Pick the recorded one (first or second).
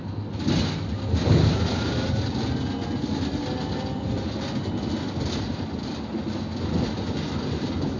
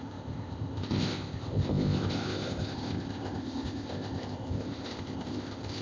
first